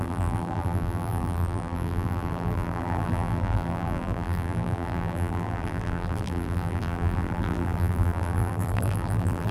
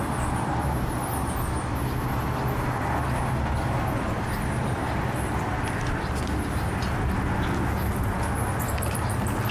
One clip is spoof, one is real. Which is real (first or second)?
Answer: second